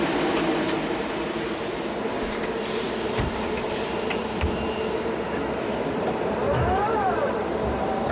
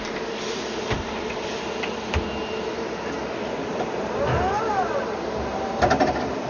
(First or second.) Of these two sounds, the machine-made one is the first